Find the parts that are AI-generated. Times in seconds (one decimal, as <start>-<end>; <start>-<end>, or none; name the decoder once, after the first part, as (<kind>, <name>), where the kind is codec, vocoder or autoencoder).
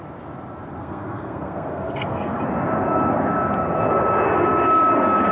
0.8-2.4 (codec, SNAC)